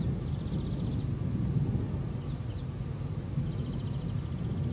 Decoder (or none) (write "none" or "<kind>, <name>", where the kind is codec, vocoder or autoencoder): none